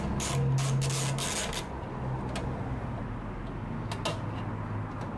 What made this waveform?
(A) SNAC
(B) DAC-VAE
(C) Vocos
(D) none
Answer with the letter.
D